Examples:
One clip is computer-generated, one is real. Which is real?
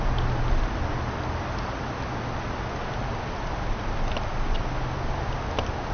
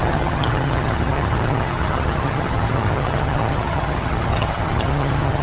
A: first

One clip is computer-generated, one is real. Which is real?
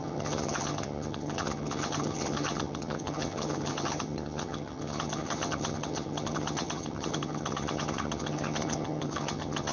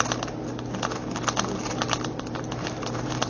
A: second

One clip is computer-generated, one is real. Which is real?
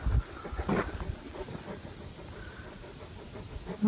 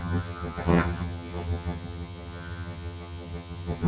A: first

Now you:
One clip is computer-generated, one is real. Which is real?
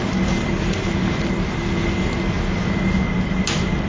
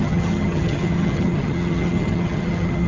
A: first